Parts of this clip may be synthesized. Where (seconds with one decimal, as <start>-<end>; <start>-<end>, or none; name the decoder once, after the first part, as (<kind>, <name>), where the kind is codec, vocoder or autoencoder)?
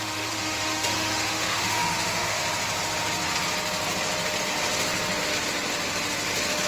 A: 0.0-2.4 (autoencoder, DAC-VAE)